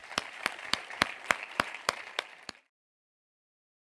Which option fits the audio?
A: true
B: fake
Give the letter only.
B